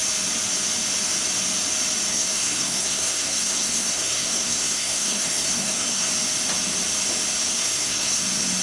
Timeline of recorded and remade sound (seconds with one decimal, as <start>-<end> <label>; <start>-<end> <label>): 0.0-2.1 recorded; 2.1-6.1 remade; 6.1-7.5 recorded; 7.5-8.2 remade; 8.2-8.6 recorded